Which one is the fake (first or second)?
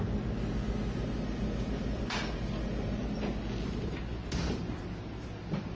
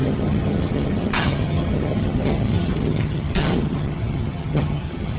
second